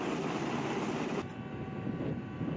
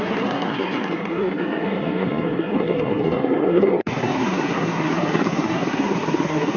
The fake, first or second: second